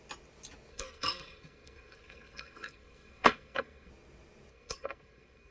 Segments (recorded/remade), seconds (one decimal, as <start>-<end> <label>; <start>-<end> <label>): 0.0-0.7 recorded; 0.7-3.9 remade; 3.9-4.5 recorded; 4.5-5.5 remade